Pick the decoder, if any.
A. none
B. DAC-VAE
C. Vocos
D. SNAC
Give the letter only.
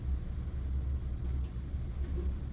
A